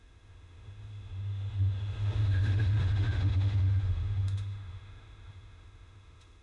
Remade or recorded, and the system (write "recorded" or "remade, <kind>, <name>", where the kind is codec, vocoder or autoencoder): remade, autoencoder, DAC-VAE